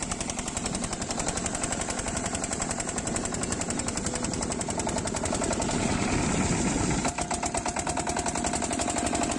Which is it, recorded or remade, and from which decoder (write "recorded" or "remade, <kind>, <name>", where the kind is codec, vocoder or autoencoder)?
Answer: recorded